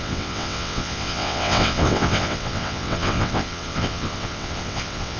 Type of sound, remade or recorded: remade